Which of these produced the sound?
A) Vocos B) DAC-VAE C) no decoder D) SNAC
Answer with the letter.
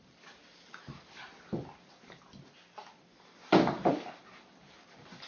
C